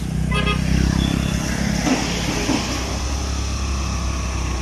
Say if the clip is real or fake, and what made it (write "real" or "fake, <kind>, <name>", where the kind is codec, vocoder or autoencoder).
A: real